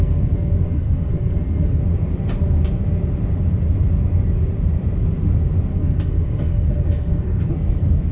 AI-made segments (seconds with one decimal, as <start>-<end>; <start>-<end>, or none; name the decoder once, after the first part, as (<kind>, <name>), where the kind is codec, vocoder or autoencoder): 0.0-1.8 (codec, SNAC); 5.7-8.1